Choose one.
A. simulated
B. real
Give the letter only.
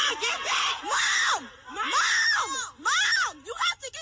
B